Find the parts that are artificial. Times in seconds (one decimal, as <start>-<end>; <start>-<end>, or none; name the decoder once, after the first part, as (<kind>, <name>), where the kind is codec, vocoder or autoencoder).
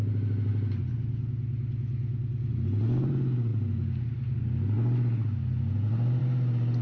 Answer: none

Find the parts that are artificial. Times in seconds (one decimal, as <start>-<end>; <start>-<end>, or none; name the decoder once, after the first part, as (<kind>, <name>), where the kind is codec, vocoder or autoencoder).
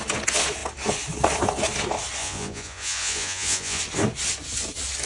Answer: 2.2-3.8 (vocoder, Vocos)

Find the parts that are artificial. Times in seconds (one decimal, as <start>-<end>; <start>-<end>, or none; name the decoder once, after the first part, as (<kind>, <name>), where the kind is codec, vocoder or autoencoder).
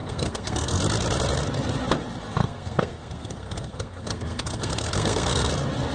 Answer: 0.0-0.8 (codec, SNAC); 2.4-5.5